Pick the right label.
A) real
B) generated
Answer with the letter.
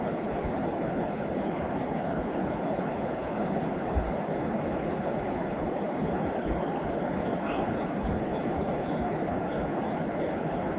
B